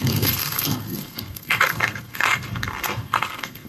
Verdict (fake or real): fake